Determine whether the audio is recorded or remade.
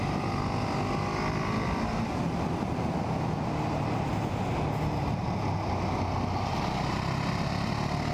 recorded